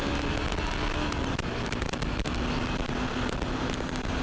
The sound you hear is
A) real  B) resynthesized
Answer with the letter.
A